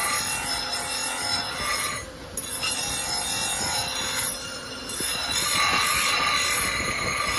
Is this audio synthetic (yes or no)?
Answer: no